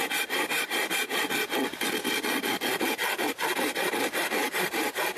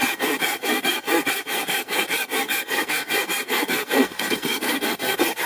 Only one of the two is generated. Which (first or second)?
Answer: second